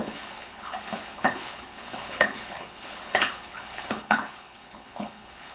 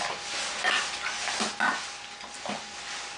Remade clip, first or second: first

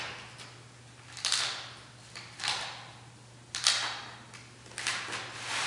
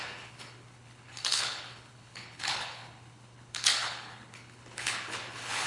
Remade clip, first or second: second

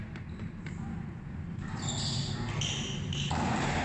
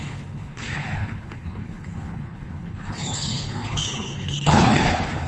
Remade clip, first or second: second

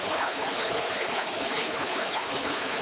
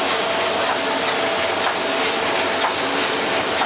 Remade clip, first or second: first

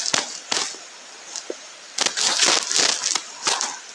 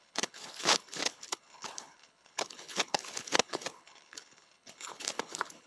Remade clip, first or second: second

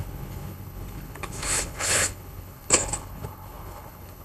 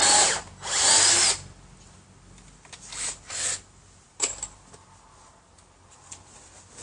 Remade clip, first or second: first